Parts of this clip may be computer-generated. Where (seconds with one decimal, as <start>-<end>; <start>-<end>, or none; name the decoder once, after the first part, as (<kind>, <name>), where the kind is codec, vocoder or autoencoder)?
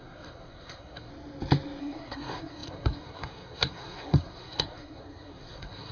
0.0-1.1 (codec, SNAC); 1.8-5.9